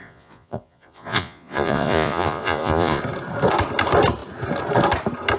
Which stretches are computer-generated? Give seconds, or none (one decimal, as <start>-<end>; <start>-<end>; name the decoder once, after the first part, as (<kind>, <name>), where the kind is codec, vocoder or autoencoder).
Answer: 0.0-3.0 (vocoder, Vocos)